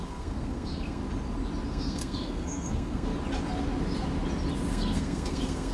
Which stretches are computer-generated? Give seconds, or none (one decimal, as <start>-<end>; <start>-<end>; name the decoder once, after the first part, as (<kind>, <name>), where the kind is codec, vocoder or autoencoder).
0.0-1.0 (codec, SNAC); 1.7-3.1; 4.7-5.7